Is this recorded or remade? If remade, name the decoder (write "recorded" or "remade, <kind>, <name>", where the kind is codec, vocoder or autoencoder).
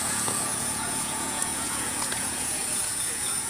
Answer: remade, vocoder, Vocos